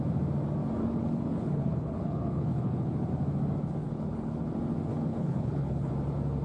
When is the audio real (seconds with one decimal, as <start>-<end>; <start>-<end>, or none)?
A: 0.0-0.8; 3.1-3.8; 4.5-4.9; 5.9-6.4